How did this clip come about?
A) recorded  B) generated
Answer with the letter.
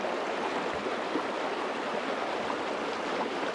A